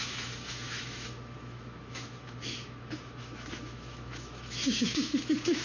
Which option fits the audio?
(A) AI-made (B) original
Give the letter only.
A